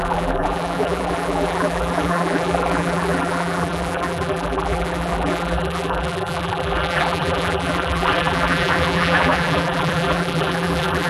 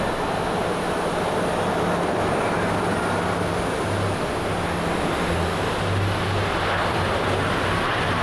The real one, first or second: second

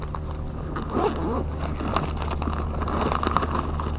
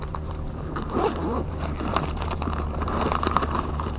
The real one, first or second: first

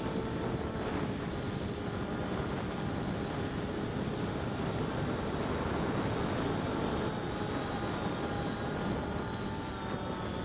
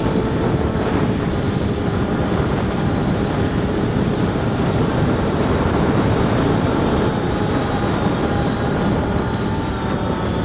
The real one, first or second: first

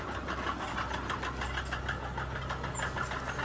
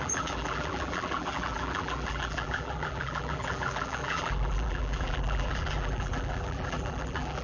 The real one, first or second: first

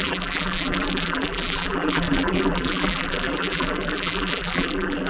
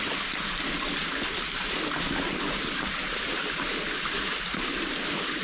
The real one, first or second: second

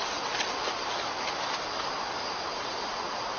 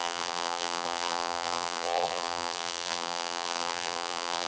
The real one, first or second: first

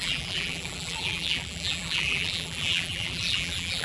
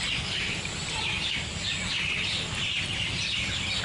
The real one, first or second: second